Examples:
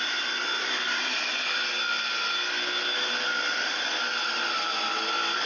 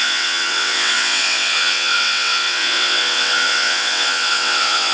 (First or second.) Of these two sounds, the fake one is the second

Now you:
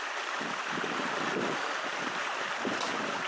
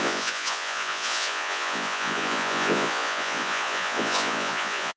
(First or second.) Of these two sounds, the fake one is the second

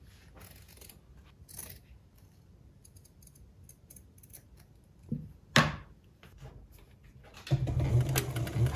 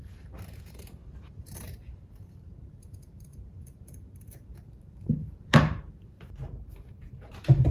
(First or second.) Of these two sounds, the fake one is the second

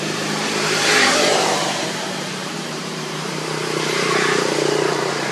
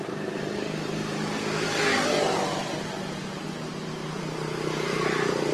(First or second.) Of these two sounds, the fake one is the first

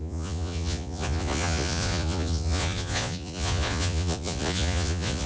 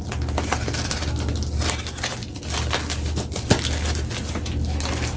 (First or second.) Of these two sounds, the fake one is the first